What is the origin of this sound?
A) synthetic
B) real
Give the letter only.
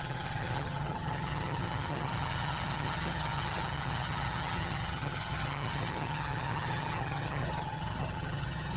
A